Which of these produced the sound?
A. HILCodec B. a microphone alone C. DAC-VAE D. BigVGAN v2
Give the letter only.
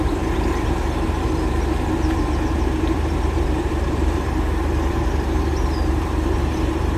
D